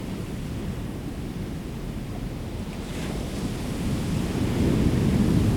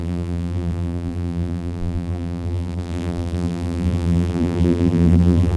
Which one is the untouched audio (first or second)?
first